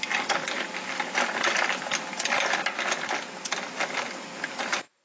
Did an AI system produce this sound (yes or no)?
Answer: no